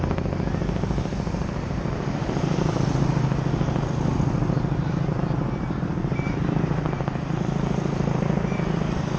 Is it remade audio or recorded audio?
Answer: remade